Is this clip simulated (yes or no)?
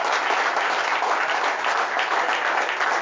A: no